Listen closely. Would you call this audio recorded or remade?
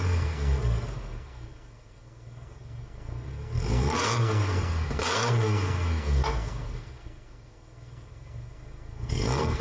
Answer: remade